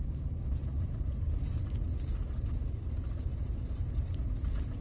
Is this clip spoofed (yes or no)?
no